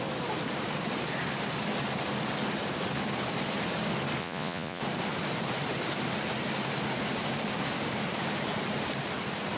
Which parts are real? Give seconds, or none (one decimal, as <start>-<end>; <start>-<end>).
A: 0.0-4.2; 4.8-9.6